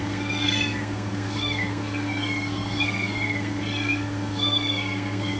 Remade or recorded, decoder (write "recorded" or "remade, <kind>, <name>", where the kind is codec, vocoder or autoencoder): remade, codec, SNAC